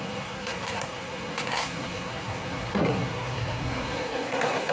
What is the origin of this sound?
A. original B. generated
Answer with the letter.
B